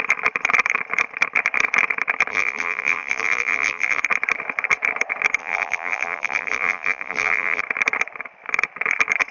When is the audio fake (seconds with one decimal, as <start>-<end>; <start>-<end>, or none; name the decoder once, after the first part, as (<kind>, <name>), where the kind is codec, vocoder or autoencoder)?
2.3-4.0 (vocoder, BigVGAN v2); 5.4-7.6

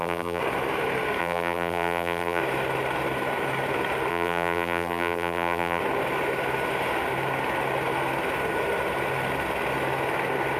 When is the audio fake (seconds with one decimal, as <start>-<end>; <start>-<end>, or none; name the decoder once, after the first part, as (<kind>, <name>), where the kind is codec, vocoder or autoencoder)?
0.0-0.4 (vocoder, BigVGAN v2); 1.2-2.4; 4.1-5.8

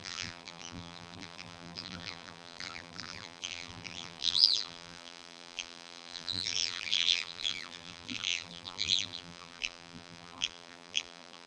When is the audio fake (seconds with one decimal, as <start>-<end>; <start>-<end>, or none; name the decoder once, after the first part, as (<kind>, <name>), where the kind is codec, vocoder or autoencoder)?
0.0-11.5 (vocoder, BigVGAN v2)

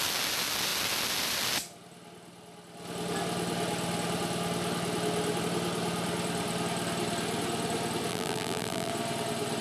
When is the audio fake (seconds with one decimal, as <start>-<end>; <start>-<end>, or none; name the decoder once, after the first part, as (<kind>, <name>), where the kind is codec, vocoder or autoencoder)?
8.1-8.9 (vocoder, BigVGAN v2)

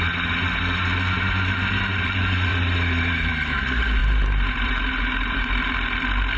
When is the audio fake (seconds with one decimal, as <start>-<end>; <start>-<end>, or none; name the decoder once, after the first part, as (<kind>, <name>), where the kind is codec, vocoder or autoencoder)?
2.5-3.3 (vocoder, BigVGAN v2); 4.0-5.5

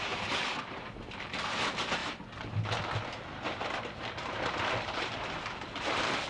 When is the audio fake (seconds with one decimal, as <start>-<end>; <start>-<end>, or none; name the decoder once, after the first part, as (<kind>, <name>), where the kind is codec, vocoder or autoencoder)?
0.0-2.0 (vocoder, BigVGAN v2); 4.2-6.3

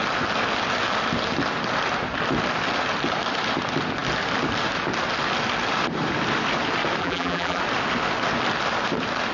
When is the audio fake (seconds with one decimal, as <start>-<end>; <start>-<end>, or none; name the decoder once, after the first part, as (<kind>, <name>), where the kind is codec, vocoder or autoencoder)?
7.0-7.6 (vocoder, BigVGAN v2)